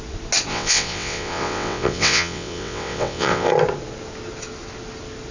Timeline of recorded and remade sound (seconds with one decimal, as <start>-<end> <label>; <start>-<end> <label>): 0.0-0.5 recorded; 0.5-3.5 remade; 3.5-5.3 recorded